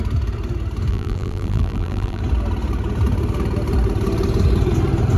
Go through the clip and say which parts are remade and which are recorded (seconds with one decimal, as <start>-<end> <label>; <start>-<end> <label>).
0.0-0.9 recorded; 0.9-2.2 remade; 2.2-5.2 recorded